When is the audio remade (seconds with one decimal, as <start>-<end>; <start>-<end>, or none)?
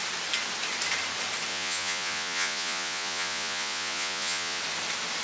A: 1.5-4.6